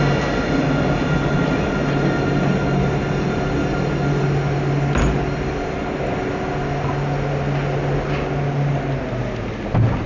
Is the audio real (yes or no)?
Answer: yes